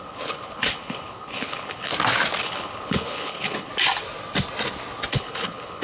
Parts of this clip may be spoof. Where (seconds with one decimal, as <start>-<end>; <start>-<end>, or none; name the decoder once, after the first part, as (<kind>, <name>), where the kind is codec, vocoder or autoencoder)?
0.0-1.9 (codec, HILCodec); 2.4-3.7; 5.1-5.8